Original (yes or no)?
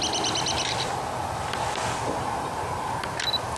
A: yes